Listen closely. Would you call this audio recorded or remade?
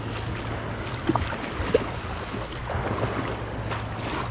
recorded